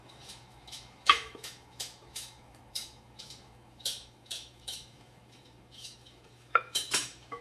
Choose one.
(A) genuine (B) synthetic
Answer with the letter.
B